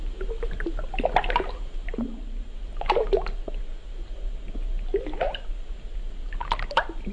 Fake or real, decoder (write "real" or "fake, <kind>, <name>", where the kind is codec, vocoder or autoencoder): real